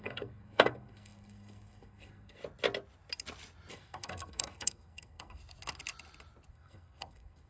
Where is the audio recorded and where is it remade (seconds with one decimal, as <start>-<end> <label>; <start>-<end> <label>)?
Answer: 0.0-2.4 remade; 2.4-3.7 recorded; 3.7-5.4 remade; 5.4-6.5 recorded; 6.5-7.5 remade

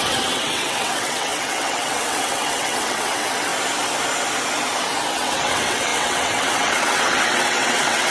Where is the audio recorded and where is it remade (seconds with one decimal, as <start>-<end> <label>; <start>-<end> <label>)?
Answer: 0.0-3.5 remade; 3.5-5.1 recorded; 5.1-8.1 remade

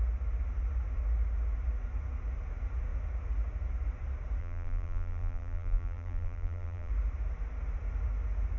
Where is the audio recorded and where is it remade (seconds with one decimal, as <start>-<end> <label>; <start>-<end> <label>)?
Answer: 0.0-4.4 recorded; 4.4-6.9 remade; 6.9-8.6 recorded